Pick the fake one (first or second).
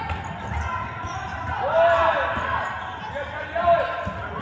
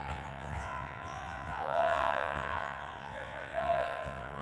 second